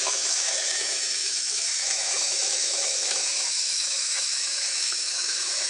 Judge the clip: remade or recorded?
remade